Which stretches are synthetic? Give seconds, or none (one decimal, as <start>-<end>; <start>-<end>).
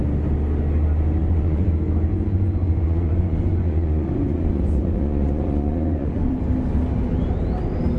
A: 1.2-1.7; 2.1-6.3